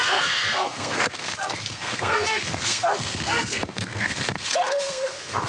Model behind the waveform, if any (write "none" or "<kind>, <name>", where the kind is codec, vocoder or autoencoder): codec, SNAC